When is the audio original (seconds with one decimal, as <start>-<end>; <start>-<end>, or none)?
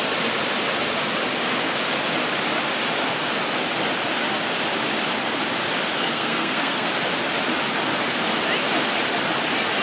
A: 0.0-5.9; 6.9-9.8